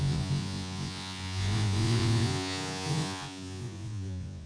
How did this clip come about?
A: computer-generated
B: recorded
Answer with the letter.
A